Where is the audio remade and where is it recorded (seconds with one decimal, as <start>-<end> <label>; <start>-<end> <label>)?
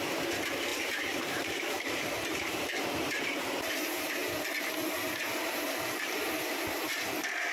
0.0-4.2 remade; 4.2-5.1 recorded; 5.1-7.5 remade